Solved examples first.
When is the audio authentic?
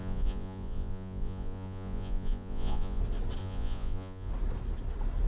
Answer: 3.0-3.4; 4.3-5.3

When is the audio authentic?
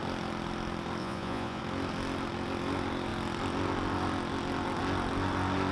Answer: 0.0-1.0; 1.6-5.7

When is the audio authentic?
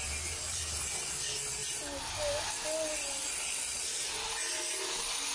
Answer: 0.0-5.3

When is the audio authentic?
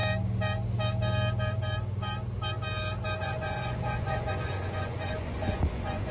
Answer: 0.0-3.2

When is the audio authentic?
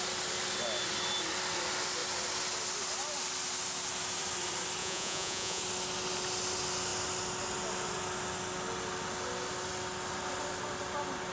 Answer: 0.0-4.8; 5.6-11.3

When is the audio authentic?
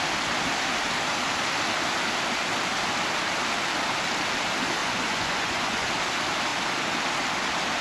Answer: 0.0-4.8; 5.9-7.8